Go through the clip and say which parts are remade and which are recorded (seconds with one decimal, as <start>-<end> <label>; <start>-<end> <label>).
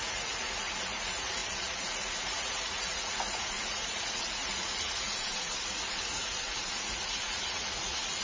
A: 0.0-8.2 remade